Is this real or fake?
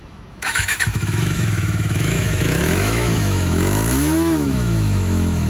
fake